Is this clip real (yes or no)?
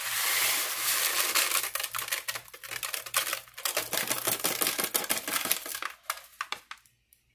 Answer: yes